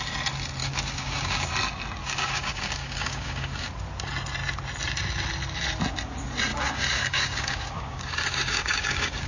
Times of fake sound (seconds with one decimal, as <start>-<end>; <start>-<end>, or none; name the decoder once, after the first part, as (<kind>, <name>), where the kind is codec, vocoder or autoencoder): 0.6-1.5 (codec, DAC); 2.0-3.7; 6.5-9.3